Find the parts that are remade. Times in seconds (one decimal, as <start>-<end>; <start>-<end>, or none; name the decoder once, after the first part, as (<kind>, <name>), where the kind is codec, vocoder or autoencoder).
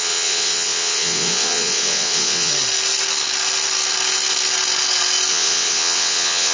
0.0-2.5 (vocoder, WaveNeXt); 5.3-6.5